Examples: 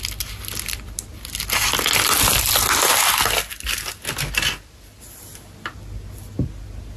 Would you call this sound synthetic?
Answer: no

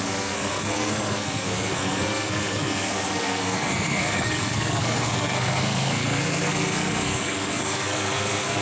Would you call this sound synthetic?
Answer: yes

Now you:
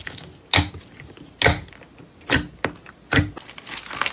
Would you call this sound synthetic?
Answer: no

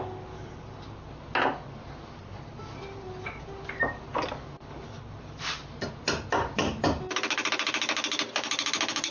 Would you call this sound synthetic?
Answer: no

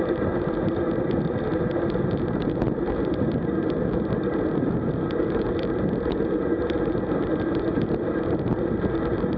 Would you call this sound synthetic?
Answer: no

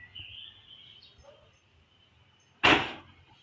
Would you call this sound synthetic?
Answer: no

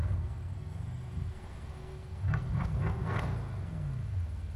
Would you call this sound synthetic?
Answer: yes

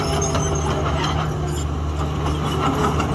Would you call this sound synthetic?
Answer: no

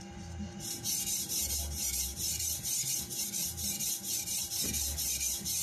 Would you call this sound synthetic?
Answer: yes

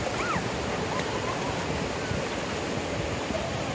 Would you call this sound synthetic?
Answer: no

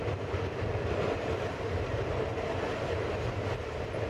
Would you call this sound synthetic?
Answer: no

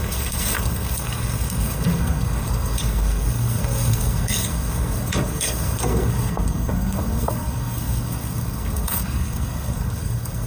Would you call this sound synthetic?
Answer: yes